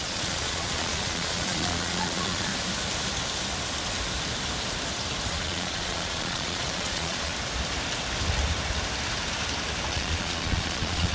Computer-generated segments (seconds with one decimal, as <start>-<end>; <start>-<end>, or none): 0.0-2.5; 5.3-7.3; 9.9-11.1